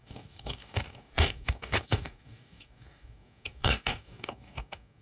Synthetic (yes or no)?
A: yes